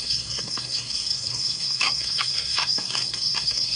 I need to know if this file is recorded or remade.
remade